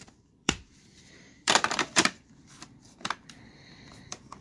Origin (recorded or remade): remade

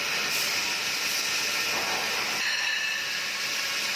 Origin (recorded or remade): recorded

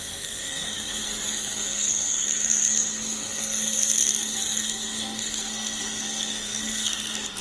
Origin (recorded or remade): remade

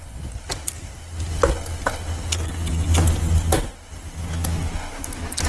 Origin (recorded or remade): recorded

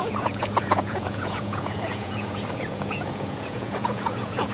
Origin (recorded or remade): remade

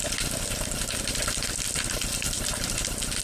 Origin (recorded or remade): recorded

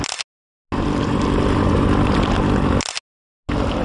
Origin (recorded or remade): recorded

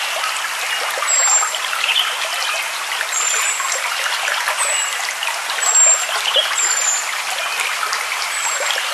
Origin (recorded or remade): recorded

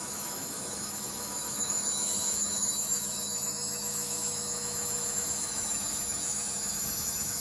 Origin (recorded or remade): remade